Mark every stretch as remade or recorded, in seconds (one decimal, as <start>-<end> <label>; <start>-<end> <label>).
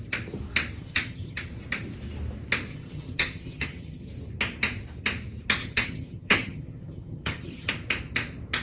0.0-0.8 recorded; 0.8-1.5 remade; 1.5-2.7 recorded; 2.7-4.1 remade; 4.1-5.6 recorded; 5.6-7.7 remade; 7.7-8.6 recorded